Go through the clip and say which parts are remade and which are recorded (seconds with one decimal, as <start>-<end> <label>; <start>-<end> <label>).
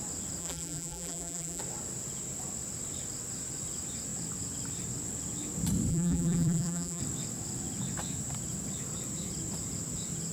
0.0-0.4 recorded; 0.4-1.6 remade; 1.6-5.9 recorded; 5.9-7.0 remade; 7.0-10.3 recorded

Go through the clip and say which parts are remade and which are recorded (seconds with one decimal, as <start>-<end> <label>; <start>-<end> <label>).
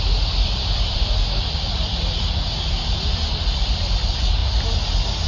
0.0-4.4 remade; 4.4-5.3 recorded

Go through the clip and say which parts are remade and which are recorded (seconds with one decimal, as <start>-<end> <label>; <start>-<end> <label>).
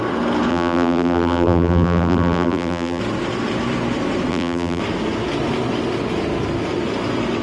0.0-0.5 recorded; 0.5-3.0 remade; 3.0-4.3 recorded; 4.3-4.8 remade; 4.8-7.4 recorded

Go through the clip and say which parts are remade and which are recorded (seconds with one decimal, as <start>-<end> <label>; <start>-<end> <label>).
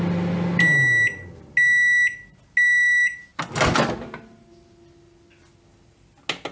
0.0-6.5 recorded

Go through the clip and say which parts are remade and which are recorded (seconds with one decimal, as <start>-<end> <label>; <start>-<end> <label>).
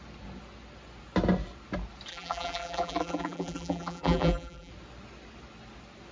0.0-2.1 recorded; 2.1-4.7 remade; 4.7-6.1 recorded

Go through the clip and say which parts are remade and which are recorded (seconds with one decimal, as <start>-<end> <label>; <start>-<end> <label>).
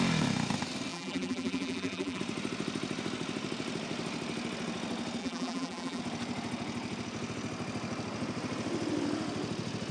0.0-0.9 recorded; 0.9-2.2 remade; 2.2-5.2 recorded; 5.2-6.0 remade; 6.0-9.9 recorded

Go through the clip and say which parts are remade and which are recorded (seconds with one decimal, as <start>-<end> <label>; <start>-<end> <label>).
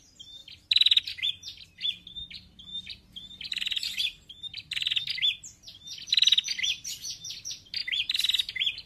0.0-8.9 recorded